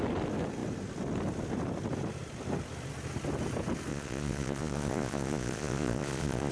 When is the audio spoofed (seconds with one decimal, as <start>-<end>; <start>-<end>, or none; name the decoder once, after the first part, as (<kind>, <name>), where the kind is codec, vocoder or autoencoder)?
3.9-6.5 (vocoder, Vocos)

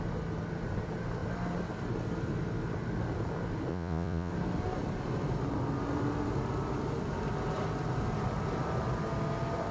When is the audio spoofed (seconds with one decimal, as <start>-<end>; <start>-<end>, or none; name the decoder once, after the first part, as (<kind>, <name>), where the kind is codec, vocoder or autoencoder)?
3.7-4.3 (vocoder, Vocos)